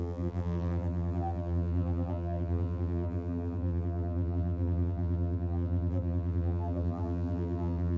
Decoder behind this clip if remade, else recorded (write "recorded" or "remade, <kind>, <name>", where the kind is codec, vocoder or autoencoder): remade, vocoder, BigVGAN v2